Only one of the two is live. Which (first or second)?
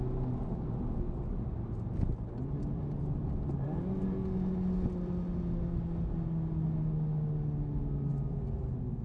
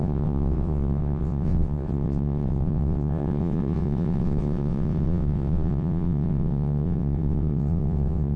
first